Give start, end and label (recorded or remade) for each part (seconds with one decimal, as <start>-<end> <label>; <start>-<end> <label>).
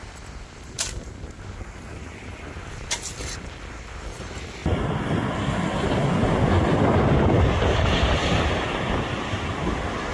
0.0-10.1 recorded